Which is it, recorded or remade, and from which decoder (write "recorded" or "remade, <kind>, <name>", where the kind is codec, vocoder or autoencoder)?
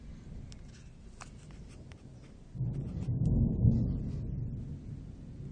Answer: recorded